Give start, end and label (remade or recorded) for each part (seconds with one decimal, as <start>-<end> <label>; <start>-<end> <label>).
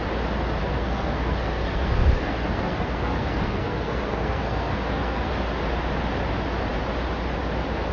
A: 0.0-0.6 recorded; 0.6-5.3 remade; 5.3-7.9 recorded